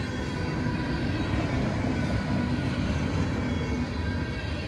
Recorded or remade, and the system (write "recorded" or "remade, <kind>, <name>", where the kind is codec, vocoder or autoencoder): recorded